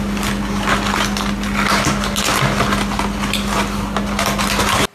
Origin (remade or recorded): recorded